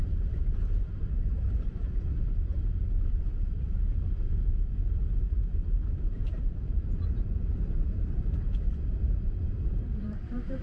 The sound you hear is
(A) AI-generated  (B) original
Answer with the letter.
A